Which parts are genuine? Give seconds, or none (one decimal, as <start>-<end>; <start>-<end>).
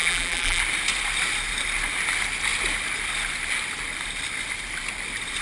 0.6-5.4